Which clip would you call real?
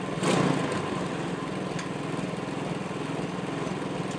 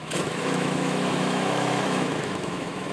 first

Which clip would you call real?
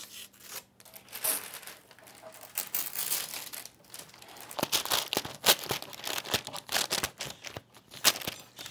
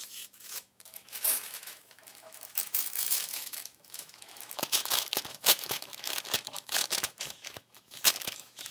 first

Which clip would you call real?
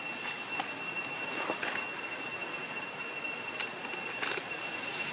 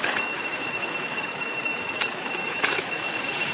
first